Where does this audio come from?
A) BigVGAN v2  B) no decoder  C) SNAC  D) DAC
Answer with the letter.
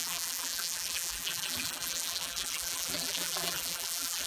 A